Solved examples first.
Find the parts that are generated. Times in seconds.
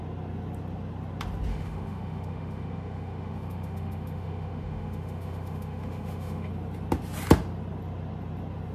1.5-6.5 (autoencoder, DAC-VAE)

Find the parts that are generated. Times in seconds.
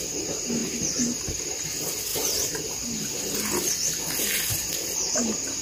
none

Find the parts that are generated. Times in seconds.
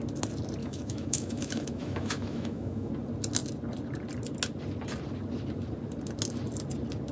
0.6-2.9 (autoencoder, DAC-VAE)